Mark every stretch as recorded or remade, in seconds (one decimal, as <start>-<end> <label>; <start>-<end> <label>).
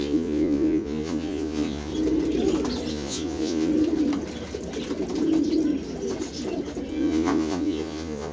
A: 0.0-1.9 remade; 1.9-2.9 recorded; 2.9-3.7 remade; 3.7-6.9 recorded; 6.9-8.3 remade